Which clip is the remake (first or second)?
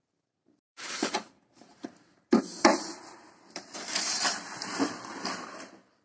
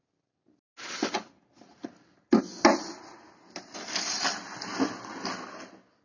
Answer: first